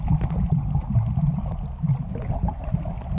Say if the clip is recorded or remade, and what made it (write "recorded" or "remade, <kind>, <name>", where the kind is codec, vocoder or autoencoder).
recorded